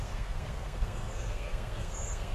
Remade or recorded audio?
remade